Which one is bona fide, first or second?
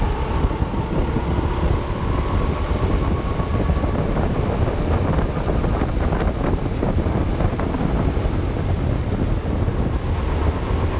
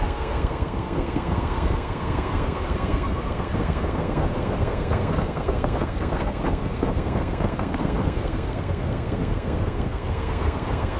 first